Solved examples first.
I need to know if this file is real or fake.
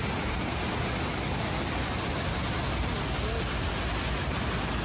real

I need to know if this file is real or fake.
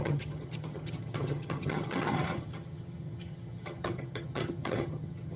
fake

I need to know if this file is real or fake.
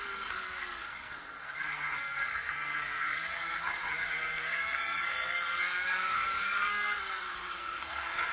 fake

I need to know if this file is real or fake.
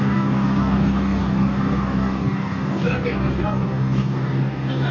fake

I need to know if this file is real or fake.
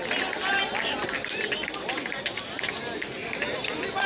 real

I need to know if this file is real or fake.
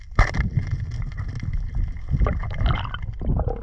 real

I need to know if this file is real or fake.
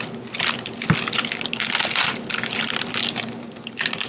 real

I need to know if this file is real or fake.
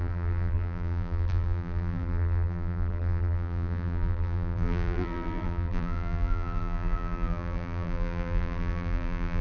fake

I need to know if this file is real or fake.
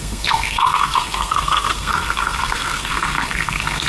fake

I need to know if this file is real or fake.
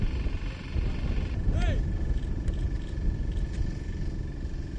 real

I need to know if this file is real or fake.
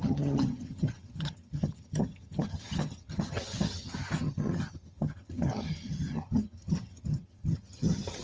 fake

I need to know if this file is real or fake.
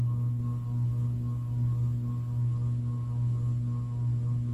real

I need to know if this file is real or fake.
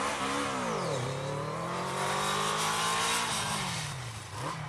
real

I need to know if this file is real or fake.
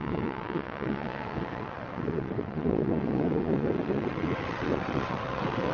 fake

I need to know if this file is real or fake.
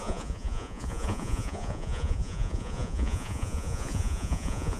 fake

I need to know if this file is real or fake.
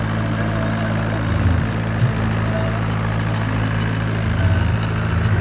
real